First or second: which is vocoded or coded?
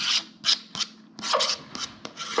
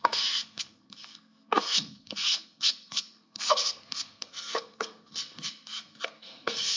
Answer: second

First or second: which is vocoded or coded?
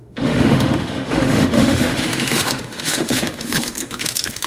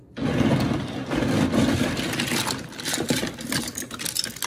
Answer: first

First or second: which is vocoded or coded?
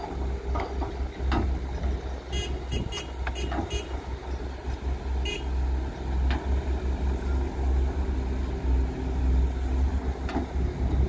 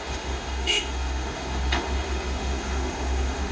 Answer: second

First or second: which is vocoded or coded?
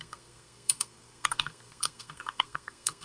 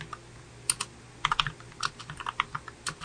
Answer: first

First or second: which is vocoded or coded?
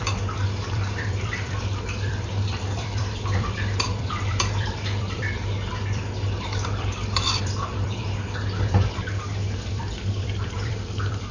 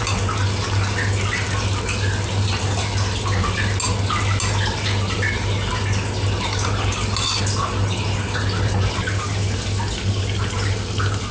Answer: first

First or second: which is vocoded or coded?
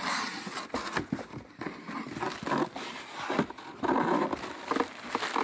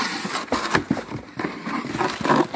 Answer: second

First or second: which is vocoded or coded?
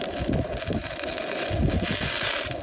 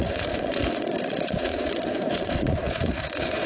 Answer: second